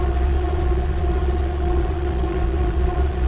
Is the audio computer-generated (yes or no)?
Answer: yes